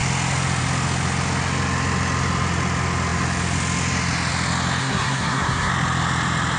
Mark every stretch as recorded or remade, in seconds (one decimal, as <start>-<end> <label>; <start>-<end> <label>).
0.0-4.8 recorded; 4.8-5.7 remade; 5.7-6.6 recorded